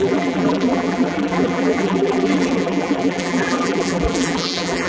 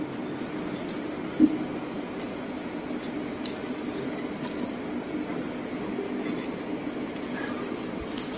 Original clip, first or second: second